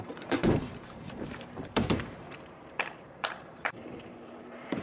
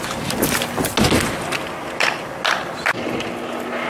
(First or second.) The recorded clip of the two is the second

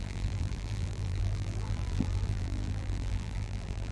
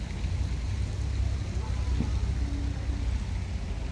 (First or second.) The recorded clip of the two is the second